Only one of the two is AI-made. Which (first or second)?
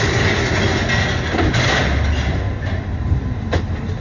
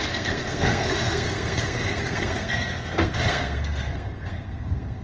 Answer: second